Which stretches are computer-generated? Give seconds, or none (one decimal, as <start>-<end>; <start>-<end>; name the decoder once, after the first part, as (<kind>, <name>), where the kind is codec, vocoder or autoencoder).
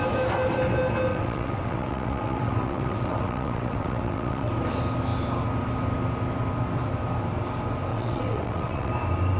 1.1-4.5 (vocoder, WaveNeXt); 7.9-8.9